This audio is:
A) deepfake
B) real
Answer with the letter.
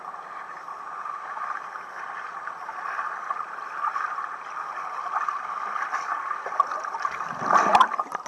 B